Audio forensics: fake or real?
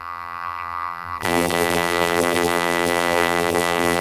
fake